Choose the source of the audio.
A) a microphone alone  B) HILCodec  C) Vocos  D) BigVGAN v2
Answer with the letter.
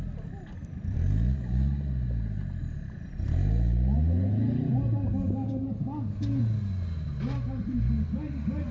A